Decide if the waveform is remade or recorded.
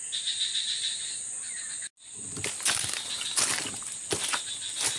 recorded